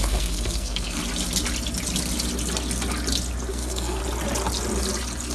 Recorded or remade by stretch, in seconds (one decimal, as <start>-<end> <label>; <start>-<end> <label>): 0.0-1.0 remade; 1.0-3.5 recorded; 3.5-4.0 remade; 4.0-5.3 recorded